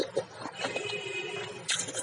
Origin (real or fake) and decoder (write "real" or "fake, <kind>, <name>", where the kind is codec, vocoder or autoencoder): real